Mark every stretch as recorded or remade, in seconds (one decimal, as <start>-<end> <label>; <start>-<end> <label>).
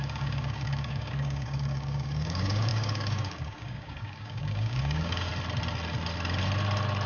0.0-5.3 remade; 5.3-7.1 recorded